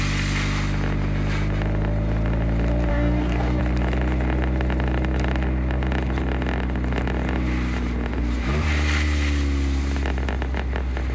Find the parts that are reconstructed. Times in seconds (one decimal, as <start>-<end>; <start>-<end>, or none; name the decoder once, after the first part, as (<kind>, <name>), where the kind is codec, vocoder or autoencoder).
2.9-3.6 (codec, DAC)